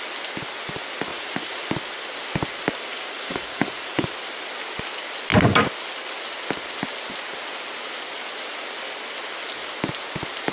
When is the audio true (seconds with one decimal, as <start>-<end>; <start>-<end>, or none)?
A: 0.0-1.1; 1.7-2.9; 4.1-10.5